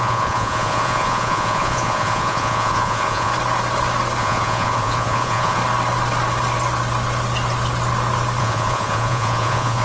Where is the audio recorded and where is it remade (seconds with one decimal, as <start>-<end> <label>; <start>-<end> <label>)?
0.0-3.3 remade; 3.3-4.2 recorded; 4.2-5.6 remade; 5.6-8.4 recorded; 8.4-9.8 remade